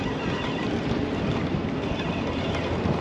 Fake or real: fake